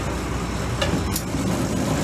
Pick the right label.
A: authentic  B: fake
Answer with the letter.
A